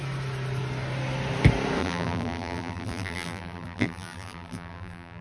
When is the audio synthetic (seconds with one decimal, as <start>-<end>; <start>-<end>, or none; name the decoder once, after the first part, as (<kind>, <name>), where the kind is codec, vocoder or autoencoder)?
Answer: 1.8-5.2 (vocoder, BigVGAN v2)